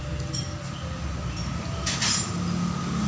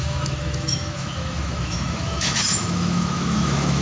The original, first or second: first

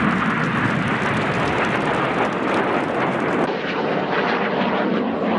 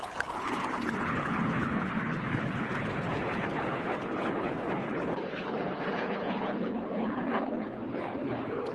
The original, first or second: first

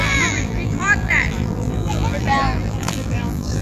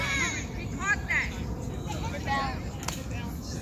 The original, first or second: second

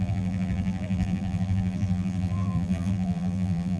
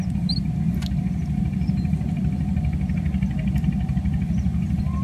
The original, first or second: second